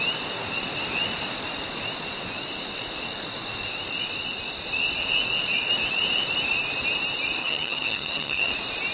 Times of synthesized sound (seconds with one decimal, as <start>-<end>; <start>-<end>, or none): 7.4-8.5